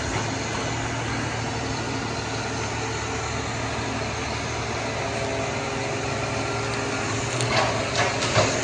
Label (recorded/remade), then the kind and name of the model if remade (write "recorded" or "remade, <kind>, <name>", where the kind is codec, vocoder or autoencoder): recorded